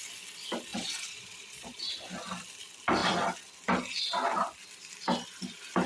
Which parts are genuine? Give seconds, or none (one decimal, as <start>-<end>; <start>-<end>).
0.0-0.7; 1.8-5.9